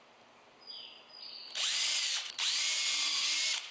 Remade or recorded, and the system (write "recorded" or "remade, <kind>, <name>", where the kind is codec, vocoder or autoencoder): recorded